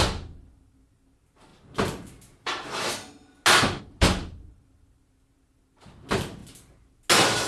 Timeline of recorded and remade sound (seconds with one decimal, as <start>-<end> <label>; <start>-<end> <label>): 0.0-7.5 recorded